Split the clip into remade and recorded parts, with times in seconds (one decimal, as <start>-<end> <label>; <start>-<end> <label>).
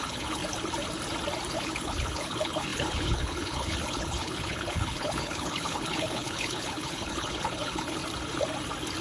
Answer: 0.0-0.4 remade; 0.4-1.5 recorded; 1.5-8.0 remade; 8.0-9.0 recorded